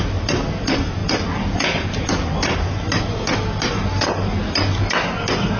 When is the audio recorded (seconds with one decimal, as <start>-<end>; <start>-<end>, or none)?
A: 0.0-5.6